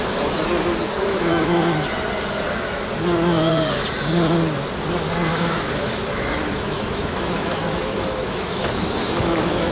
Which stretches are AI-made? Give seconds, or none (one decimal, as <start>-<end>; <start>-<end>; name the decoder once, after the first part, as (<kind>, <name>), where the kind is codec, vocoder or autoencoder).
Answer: 0.8-1.6 (autoencoder, DAC-VAE); 5.3-9.7